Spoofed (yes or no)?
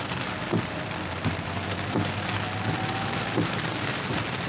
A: no